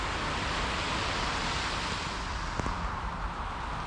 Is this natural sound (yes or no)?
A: yes